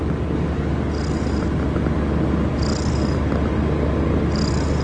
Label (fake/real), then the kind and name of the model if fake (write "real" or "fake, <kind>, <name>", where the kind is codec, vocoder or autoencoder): real